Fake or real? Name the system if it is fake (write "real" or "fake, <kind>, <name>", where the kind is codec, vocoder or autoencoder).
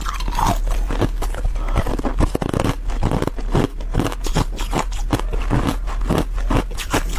real